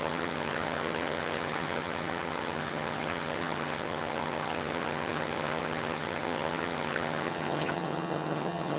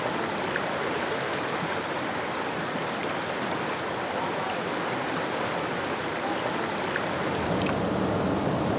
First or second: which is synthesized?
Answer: first